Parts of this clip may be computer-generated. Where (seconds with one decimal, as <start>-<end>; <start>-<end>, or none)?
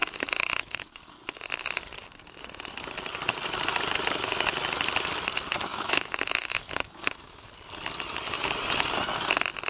0.0-1.0; 5.7-7.4